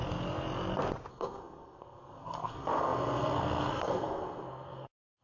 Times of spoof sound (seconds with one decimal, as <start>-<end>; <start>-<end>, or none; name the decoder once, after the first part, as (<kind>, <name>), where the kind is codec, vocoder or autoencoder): 1.1-5.2 (codec, SNAC)